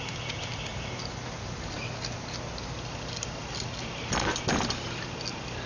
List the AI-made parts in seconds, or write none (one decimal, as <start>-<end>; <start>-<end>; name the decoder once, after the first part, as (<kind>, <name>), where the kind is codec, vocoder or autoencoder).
none